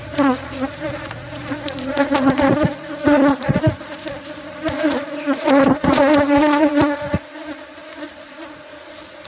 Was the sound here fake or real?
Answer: fake